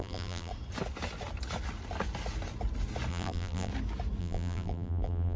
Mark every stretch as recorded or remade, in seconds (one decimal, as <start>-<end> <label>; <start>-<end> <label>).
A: 0.0-0.5 remade; 0.5-3.1 recorded; 3.1-3.7 remade; 3.7-4.2 recorded; 4.2-5.4 remade

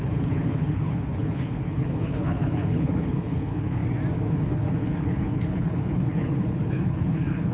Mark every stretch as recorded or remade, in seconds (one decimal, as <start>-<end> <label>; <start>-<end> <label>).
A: 0.0-3.8 remade; 3.8-4.3 recorded; 4.3-7.5 remade

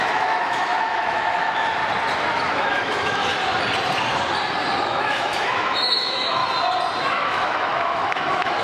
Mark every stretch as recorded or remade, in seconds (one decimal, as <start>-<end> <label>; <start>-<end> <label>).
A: 0.0-1.8 remade; 1.8-2.5 recorded; 2.5-3.2 remade; 3.2-4.8 recorded; 4.8-6.4 remade; 6.4-7.1 recorded; 7.1-8.6 remade

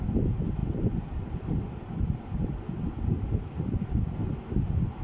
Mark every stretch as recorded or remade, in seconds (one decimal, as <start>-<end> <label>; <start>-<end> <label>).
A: 0.0-5.0 recorded

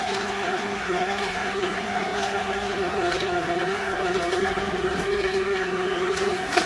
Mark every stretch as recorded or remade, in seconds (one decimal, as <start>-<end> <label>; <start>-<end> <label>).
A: 0.0-6.7 remade

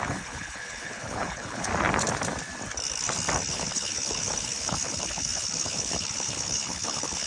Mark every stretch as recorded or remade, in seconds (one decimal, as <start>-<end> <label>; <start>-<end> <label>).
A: 0.0-1.7 remade; 1.7-3.5 recorded; 3.5-7.3 remade

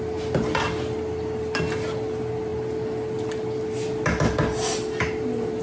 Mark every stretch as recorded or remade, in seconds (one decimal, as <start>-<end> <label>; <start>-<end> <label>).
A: 0.0-5.6 recorded

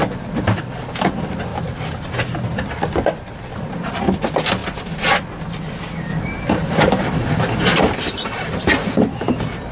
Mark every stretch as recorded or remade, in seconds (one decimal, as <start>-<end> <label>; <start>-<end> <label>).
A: 0.0-1.5 recorded; 1.5-2.1 remade; 2.1-3.5 recorded; 3.5-4.0 remade; 4.0-6.1 recorded; 6.1-7.8 remade; 7.8-9.7 recorded